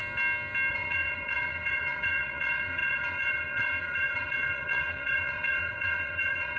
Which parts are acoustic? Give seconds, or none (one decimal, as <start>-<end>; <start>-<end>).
0.0-0.7